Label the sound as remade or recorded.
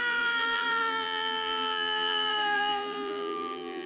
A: remade